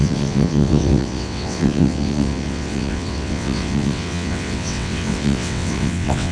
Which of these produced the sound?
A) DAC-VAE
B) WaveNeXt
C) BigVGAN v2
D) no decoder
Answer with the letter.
B